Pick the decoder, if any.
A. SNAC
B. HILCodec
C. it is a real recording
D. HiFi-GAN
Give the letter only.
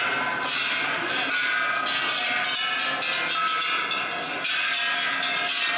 C